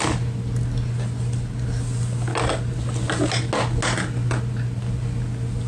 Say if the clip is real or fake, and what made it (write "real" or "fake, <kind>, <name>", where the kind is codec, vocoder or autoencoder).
real